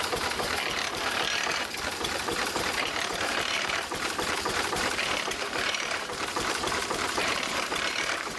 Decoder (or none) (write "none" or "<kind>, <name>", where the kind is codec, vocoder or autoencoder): vocoder, BigVGAN v2